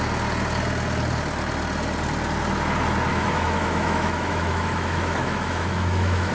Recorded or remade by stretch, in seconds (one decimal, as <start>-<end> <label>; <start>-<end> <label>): 0.0-3.1 recorded; 3.1-6.3 remade